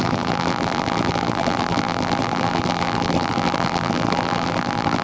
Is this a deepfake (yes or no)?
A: yes